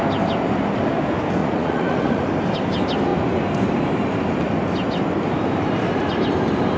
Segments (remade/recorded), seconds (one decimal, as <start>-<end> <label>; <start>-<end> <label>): 0.0-1.4 recorded; 1.4-2.2 remade; 2.2-6.8 recorded